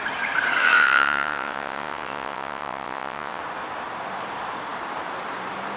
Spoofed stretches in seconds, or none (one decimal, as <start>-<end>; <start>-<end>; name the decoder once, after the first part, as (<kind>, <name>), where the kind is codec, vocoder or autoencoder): 0.6-3.4 (vocoder, WaveNeXt)